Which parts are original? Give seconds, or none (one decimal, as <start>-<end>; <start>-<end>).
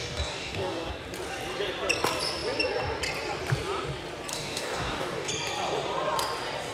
0.9-4.3; 5.3-6.7